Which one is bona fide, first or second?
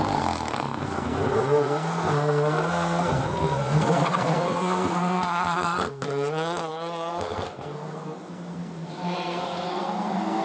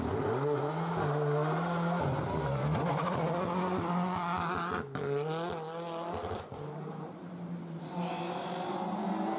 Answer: second